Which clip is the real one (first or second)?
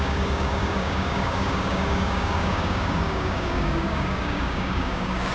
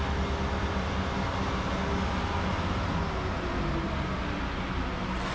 second